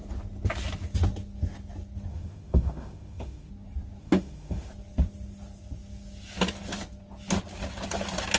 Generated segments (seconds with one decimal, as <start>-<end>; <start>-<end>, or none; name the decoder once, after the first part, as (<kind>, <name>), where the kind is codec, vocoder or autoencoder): 2.1-3.5 (autoencoder, DAC-VAE); 4.0-4.7